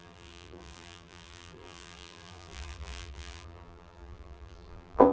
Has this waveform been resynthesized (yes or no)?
yes